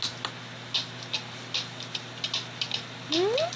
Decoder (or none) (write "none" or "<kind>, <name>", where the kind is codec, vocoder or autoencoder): none